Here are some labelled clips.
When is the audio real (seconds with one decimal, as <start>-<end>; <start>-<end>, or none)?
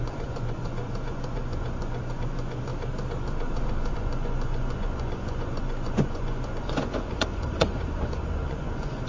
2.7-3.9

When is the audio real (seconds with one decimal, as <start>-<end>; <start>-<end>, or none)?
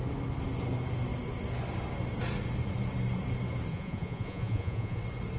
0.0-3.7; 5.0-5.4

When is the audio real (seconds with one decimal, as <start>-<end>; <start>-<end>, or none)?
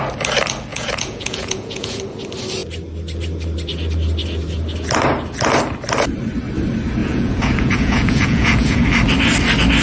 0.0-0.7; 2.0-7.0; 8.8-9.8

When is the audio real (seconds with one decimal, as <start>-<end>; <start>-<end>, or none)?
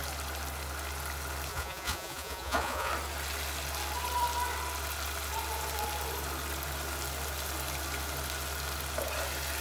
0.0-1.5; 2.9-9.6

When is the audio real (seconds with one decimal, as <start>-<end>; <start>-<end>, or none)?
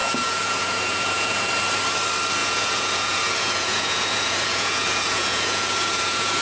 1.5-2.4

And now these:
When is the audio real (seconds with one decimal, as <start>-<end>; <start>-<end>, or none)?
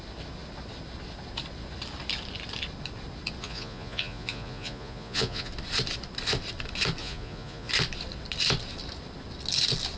0.0-3.4; 5.5-7.0; 7.7-10.0